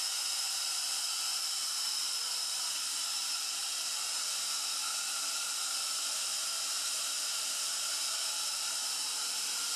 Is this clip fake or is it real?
real